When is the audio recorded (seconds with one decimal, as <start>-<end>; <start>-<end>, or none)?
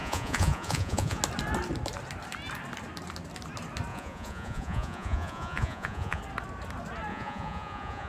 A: 1.2-3.9; 6.2-7.1